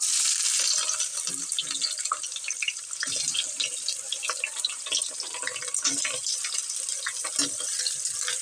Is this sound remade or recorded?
recorded